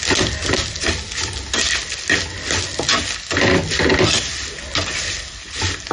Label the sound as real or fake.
real